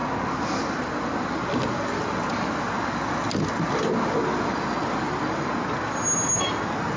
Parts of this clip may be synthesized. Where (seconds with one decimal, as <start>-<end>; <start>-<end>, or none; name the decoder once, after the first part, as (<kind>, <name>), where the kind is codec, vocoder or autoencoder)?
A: none